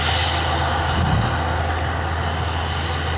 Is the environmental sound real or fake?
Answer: real